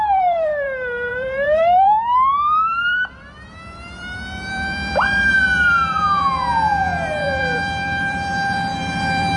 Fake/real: fake